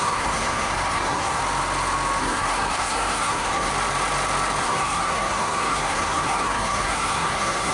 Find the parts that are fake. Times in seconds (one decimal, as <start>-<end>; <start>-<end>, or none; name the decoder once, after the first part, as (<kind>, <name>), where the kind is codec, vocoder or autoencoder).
0.0-1.4 (codec, SNAC); 2.2-3.7; 4.6-7.7